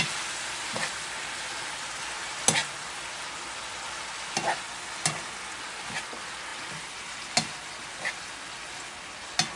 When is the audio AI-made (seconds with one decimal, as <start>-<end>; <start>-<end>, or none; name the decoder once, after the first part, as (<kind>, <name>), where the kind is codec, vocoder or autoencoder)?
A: none